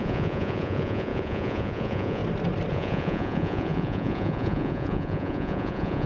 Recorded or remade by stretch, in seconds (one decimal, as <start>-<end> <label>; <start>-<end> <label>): 0.0-2.2 remade; 2.2-2.7 recorded; 2.7-6.1 remade

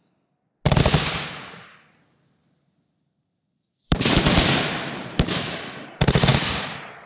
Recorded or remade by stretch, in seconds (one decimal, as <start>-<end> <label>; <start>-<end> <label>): 0.0-7.1 recorded

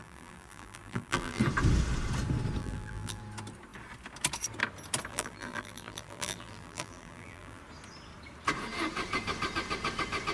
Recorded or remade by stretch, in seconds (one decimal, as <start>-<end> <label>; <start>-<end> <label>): 0.0-1.4 remade; 1.4-2.6 recorded; 2.6-3.2 remade; 3.2-5.1 recorded; 5.1-7.6 remade; 7.6-10.3 recorded

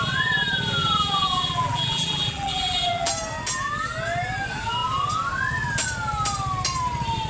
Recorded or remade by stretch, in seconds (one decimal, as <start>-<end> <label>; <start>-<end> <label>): 0.0-0.8 recorded; 0.8-3.1 remade; 3.1-7.3 recorded

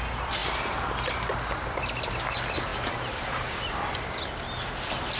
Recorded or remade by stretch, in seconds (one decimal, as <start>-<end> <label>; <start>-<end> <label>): 0.0-2.7 recorded; 2.7-3.8 remade; 3.8-5.2 recorded

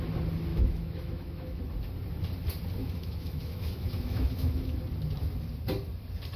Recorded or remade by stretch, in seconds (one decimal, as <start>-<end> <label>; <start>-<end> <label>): 0.0-0.5 recorded; 0.5-1.6 remade; 1.6-2.8 recorded; 2.8-4.8 remade; 4.8-6.4 recorded

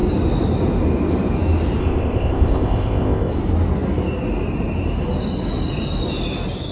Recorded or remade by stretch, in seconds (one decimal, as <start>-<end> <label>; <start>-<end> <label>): 0.0-1.8 recorded; 1.8-3.3 remade; 3.3-6.7 recorded